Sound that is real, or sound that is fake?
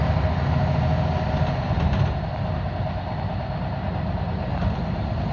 real